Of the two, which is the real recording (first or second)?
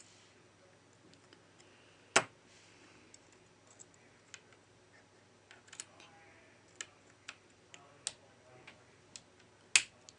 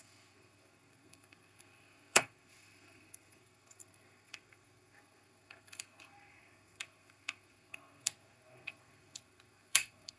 first